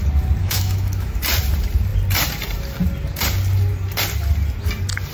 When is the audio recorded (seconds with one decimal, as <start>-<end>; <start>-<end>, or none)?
0.0-0.4; 1.2-5.1